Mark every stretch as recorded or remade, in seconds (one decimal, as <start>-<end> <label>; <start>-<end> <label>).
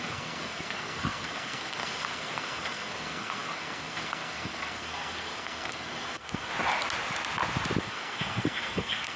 0.0-6.5 remade; 6.5-7.8 recorded; 7.8-9.2 remade